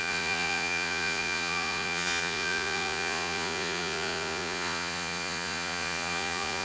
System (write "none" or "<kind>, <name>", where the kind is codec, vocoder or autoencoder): vocoder, Vocos